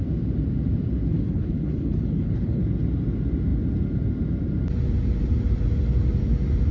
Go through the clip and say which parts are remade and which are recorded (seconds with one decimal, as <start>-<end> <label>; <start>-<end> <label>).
0.0-1.1 recorded; 1.1-2.6 remade; 2.6-6.7 recorded

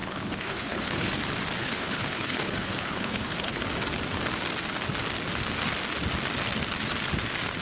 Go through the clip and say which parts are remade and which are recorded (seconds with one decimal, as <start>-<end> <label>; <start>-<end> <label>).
0.0-1.1 remade; 1.1-1.6 recorded; 1.6-3.6 remade; 3.6-7.6 recorded

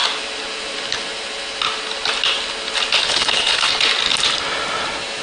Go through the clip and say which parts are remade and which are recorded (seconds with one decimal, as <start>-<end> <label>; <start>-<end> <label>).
0.0-3.0 recorded; 3.0-3.7 remade; 3.7-5.2 recorded

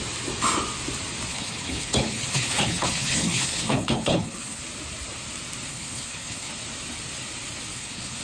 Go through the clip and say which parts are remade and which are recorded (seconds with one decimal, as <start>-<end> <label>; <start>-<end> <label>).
0.0-1.3 recorded; 1.3-4.6 remade; 4.6-5.7 recorded; 5.7-6.5 remade; 6.5-7.7 recorded; 7.7-8.2 remade

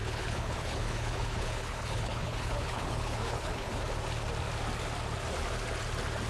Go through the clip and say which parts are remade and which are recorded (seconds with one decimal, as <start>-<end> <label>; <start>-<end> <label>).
0.0-3.8 remade; 3.8-6.3 recorded

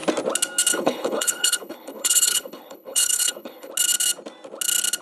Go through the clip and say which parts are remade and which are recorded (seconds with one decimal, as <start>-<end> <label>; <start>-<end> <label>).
0.0-0.7 recorded; 0.7-3.7 remade; 3.7-5.0 recorded